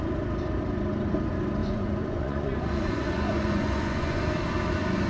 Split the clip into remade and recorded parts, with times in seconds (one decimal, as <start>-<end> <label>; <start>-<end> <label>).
0.0-1.6 recorded; 1.6-4.2 remade; 4.2-5.1 recorded